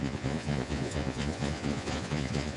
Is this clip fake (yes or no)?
yes